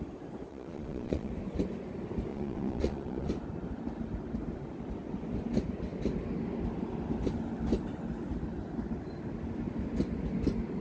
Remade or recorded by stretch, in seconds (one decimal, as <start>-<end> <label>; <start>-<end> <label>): 0.0-0.5 recorded; 0.5-1.3 remade; 1.3-2.3 recorded; 2.3-3.3 remade; 3.3-10.8 recorded